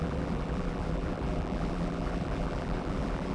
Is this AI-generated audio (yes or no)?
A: yes